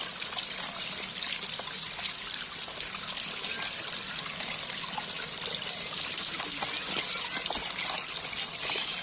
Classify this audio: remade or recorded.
recorded